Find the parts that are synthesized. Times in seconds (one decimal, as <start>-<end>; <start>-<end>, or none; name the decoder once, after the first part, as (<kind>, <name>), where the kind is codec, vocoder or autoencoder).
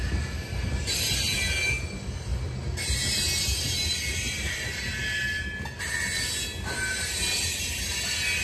none